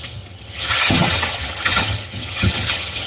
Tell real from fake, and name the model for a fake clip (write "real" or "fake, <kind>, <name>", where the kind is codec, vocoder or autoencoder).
fake, vocoder, HiFi-GAN